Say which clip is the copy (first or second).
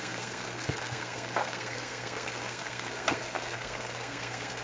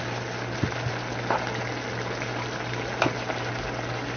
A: first